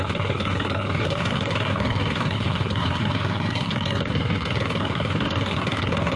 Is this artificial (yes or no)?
yes